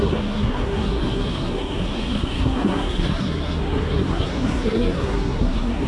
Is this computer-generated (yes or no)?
yes